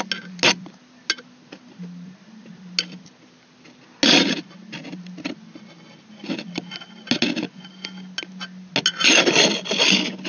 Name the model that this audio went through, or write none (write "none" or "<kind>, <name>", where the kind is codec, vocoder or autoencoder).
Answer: none